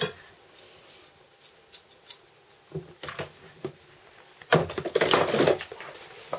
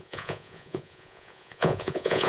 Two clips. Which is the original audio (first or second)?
first